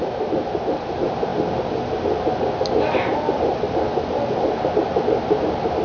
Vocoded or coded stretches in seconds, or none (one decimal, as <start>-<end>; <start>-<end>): none